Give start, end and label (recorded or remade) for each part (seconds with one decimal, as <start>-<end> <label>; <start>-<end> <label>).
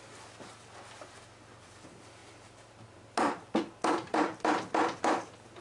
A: 0.0-5.6 recorded